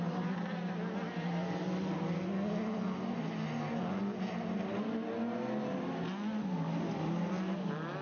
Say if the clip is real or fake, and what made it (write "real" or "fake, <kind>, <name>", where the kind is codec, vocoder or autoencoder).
real